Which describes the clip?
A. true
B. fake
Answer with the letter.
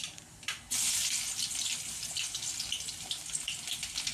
A